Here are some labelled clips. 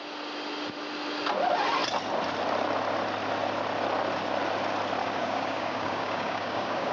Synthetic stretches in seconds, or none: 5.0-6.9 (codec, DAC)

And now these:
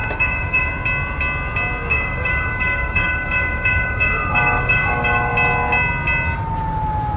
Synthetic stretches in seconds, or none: 0.0-0.7 (codec, DAC); 1.9-5.3

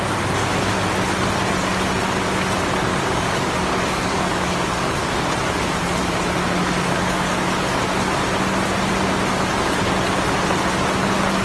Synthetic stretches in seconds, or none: 2.9-5.1 (codec, DAC); 6.0-7.8